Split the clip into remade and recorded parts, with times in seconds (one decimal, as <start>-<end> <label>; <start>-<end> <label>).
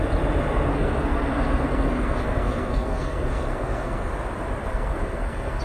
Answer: 0.0-0.7 recorded; 0.7-4.1 remade; 4.1-4.7 recorded; 4.7-5.6 remade